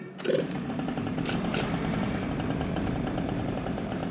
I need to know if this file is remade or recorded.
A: remade